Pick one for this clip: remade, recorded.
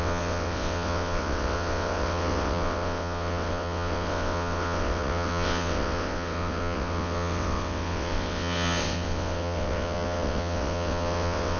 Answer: remade